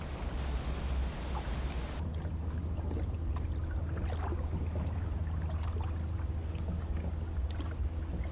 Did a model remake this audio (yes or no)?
no